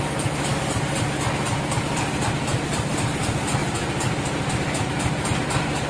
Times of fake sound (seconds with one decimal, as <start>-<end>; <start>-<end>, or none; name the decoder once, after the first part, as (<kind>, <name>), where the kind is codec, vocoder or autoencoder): none